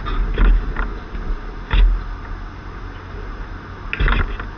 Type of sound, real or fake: real